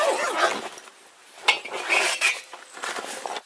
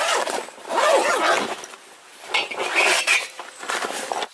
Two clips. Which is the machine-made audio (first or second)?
second